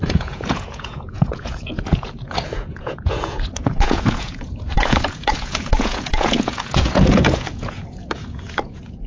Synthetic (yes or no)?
yes